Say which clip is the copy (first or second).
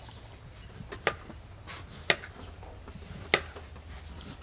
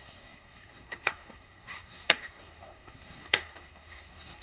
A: second